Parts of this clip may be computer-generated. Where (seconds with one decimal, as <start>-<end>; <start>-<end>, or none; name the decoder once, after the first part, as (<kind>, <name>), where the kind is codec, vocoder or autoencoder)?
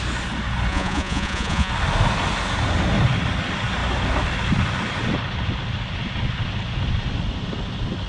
0.7-1.7 (vocoder, Vocos)